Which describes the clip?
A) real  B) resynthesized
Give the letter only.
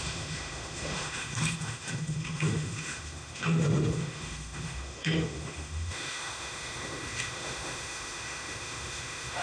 B